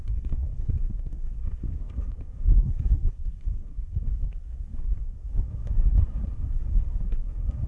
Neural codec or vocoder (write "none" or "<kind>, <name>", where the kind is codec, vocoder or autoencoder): codec, SNAC